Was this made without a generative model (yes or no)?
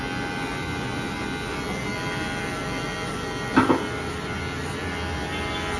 yes